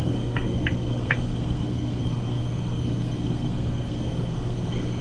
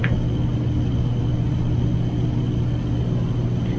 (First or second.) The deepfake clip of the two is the first